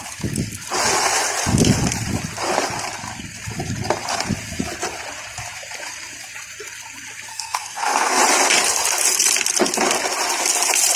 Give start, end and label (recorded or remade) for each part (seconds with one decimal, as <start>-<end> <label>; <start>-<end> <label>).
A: 0.0-7.3 recorded; 7.3-8.2 remade; 8.2-11.0 recorded